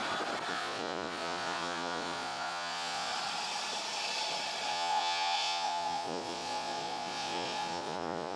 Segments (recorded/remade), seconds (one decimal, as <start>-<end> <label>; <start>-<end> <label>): 0.0-0.5 recorded; 0.5-3.1 remade; 3.1-4.7 recorded; 4.7-8.4 remade